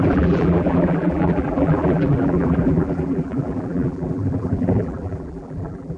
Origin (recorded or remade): remade